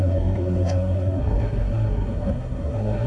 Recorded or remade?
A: remade